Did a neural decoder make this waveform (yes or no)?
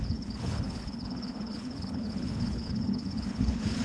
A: yes